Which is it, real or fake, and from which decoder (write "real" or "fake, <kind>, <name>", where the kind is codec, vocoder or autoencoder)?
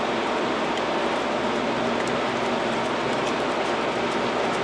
real